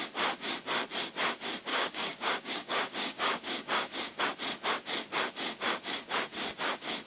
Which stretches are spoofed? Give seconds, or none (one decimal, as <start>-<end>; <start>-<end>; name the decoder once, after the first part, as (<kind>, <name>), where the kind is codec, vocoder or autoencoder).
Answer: 1.7-4.2 (codec, DAC)